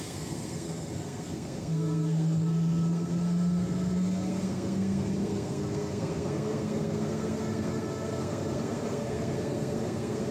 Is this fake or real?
fake